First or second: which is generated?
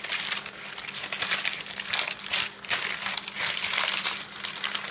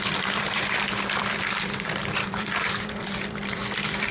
second